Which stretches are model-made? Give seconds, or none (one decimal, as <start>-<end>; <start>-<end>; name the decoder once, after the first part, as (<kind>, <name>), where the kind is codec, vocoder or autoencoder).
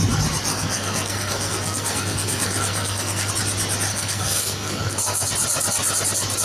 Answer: 0.5-3.3 (codec, SNAC); 3.9-5.3